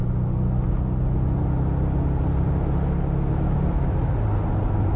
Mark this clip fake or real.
real